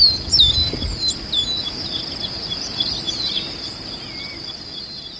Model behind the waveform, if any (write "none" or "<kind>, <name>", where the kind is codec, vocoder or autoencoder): none